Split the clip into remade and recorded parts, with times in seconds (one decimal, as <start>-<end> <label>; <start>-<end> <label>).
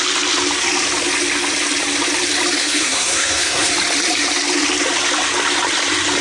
0.0-2.6 recorded; 2.6-3.7 remade; 3.7-6.2 recorded